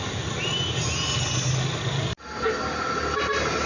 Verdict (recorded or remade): recorded